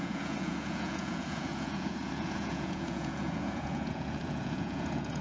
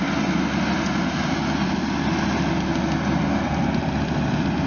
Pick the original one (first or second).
second